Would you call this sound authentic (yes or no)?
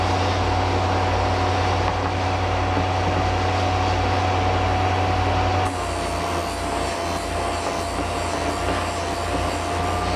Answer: yes